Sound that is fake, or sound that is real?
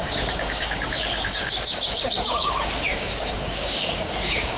fake